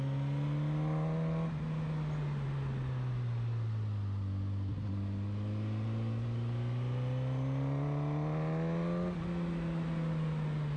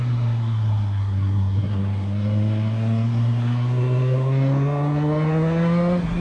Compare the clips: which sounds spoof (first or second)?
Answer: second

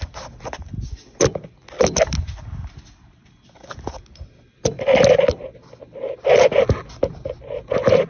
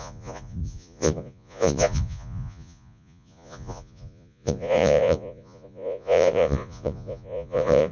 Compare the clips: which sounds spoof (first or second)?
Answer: second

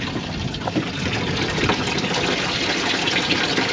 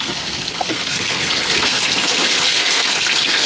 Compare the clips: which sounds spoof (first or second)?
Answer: second